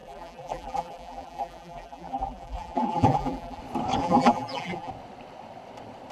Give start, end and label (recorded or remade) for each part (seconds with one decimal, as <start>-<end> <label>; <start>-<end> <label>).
0.0-3.6 remade; 3.6-4.0 recorded; 4.0-4.9 remade; 4.9-6.1 recorded